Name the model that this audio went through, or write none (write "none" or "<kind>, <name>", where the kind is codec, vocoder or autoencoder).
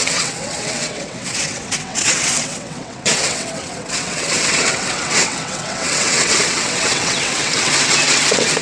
vocoder, WaveNeXt